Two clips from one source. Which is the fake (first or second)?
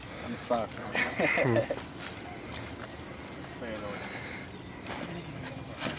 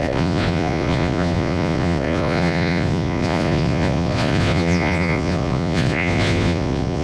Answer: second